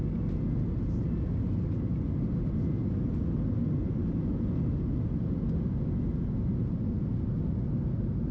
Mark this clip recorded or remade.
recorded